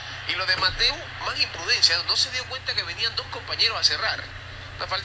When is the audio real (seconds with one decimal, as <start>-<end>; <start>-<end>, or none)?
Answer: 0.0-5.0